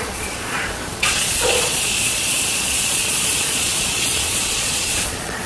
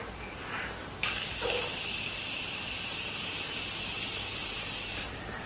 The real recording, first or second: second